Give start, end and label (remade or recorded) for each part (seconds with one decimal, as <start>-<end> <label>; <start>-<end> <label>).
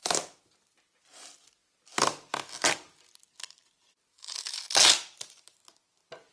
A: 0.0-0.5 remade; 0.5-4.1 recorded; 4.1-4.6 remade; 4.6-6.3 recorded